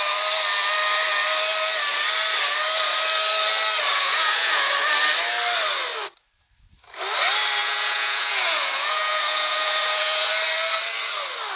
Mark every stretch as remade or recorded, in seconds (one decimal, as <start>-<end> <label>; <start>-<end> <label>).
0.0-3.9 recorded; 3.9-4.7 remade; 4.7-7.6 recorded; 7.6-10.3 remade; 10.3-11.6 recorded